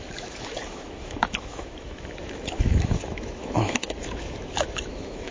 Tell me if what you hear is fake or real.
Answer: fake